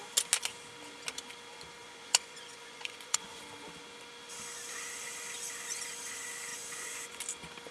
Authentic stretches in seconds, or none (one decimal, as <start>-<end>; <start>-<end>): 0.0-1.8; 3.4-6.5; 7.2-7.7